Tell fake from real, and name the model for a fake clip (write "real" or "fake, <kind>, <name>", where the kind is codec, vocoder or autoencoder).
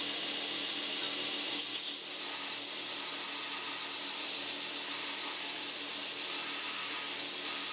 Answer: real